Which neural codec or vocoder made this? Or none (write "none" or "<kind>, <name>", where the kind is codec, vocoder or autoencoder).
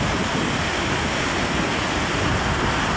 none